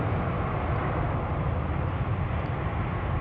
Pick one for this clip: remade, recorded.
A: recorded